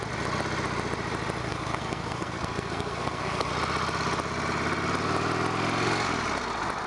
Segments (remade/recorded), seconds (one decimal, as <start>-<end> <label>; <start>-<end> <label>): 0.0-1.4 recorded; 1.4-3.5 remade; 3.5-6.9 recorded